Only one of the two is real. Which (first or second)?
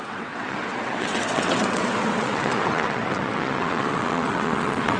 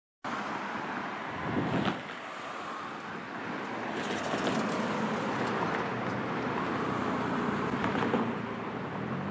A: second